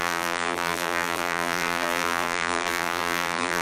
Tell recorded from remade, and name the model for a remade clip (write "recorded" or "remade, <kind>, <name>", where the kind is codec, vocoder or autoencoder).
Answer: remade, vocoder, BigVGAN v2